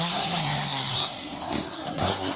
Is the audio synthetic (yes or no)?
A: yes